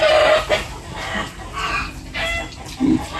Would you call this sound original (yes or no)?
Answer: yes